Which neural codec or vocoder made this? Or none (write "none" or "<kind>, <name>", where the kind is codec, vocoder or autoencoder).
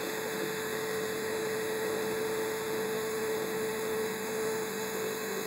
autoencoder, DAC-VAE